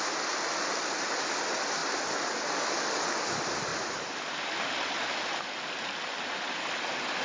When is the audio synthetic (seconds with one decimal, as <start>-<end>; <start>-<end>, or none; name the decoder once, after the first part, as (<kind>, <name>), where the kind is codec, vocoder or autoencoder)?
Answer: 3.7-5.3 (vocoder, BigVGAN v2)